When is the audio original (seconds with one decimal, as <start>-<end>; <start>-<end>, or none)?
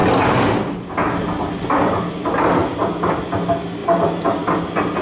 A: 0.0-5.0